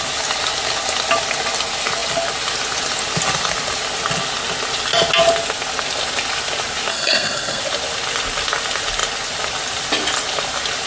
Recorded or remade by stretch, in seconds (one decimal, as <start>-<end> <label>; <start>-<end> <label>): 0.0-6.9 recorded; 6.9-7.6 remade; 7.6-10.9 recorded